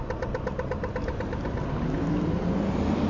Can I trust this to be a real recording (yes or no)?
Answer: yes